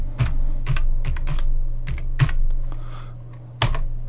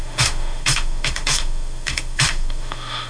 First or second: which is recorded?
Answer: first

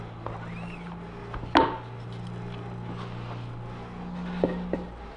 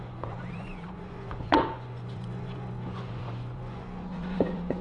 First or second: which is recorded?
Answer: first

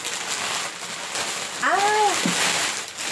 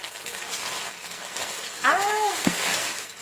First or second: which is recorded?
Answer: first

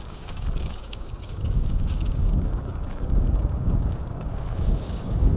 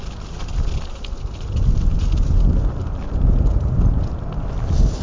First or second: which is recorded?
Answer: second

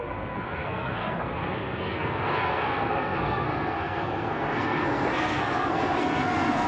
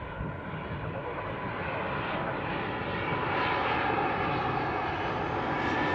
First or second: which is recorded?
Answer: second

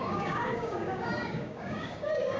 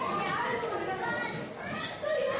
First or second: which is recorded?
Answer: second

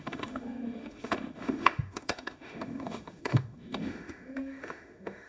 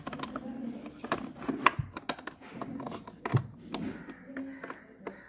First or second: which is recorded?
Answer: second